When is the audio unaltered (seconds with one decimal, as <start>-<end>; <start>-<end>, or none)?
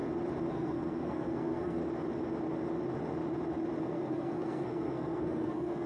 0.0-0.5; 1.8-3.8